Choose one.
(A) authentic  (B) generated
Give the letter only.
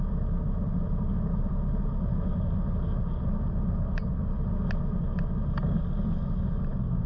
A